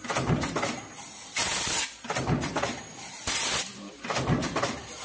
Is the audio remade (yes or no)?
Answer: no